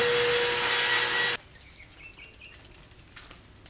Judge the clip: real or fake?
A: real